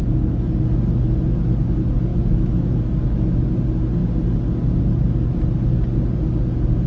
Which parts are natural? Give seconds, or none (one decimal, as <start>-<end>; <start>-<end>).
0.0-2.1; 3.4-6.9